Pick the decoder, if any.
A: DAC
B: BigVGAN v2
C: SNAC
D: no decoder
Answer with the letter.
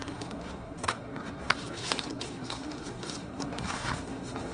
C